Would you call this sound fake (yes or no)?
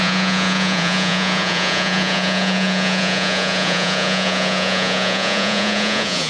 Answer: yes